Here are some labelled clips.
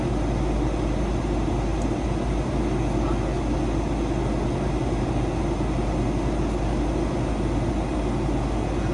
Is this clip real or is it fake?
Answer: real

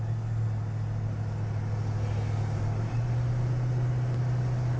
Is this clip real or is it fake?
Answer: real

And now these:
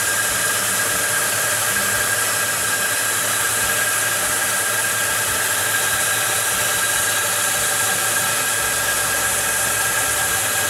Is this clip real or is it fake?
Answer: real